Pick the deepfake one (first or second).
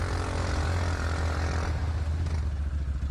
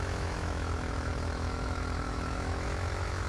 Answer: second